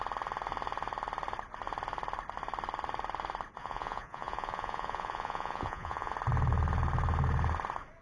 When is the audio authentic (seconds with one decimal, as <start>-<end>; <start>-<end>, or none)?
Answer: 0.0-3.6; 6.1-8.0

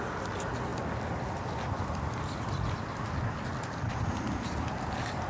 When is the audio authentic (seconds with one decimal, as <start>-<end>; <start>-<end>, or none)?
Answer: 0.0-5.3

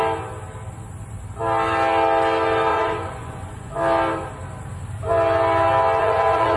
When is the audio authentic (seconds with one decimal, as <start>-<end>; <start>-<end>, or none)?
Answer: 0.0-2.7; 3.7-6.0

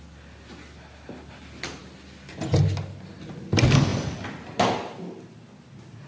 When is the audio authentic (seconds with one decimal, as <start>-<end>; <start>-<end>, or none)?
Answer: 0.0-6.1